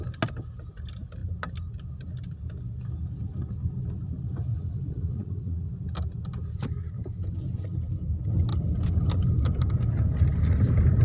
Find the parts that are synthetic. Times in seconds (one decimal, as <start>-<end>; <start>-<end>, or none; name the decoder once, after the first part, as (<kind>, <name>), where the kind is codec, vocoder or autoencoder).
4.5-5.7 (vocoder, Vocos)